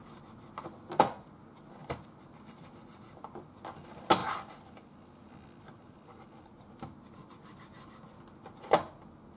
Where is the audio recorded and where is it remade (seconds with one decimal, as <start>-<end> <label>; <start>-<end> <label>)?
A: 0.0-9.4 recorded